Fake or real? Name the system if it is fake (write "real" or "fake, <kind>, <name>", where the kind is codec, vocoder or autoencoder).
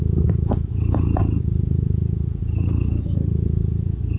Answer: fake, vocoder, Vocos